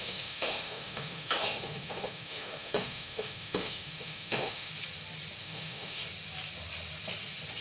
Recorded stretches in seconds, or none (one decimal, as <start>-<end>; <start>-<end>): 4.7-5.4; 6.0-7.6